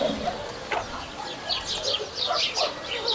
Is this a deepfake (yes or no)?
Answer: no